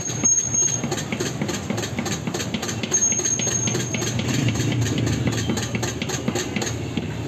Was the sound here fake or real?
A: real